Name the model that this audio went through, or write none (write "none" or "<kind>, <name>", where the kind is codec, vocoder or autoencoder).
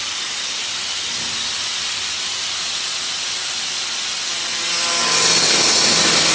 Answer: none